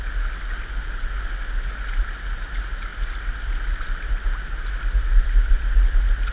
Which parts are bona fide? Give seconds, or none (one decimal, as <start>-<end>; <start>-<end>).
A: 0.0-6.3